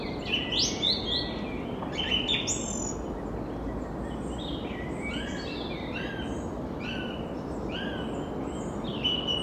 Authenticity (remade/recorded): recorded